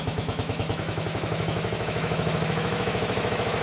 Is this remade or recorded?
remade